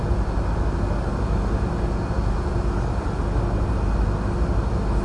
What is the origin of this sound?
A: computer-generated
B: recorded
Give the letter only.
B